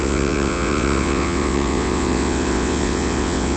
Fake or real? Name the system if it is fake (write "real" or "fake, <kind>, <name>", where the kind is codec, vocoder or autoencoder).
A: fake, vocoder, WaveNeXt